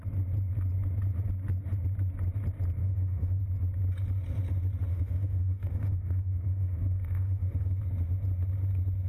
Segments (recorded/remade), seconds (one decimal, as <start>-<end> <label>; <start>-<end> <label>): 0.0-2.8 recorded; 2.8-3.4 remade; 3.4-4.9 recorded; 4.9-7.8 remade; 7.8-9.1 recorded